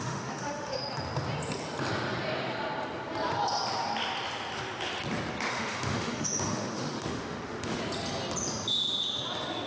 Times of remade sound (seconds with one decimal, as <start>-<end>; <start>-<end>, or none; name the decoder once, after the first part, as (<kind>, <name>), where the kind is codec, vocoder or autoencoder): 0.0-0.8 (autoencoder, DAC-VAE); 5.5-7.8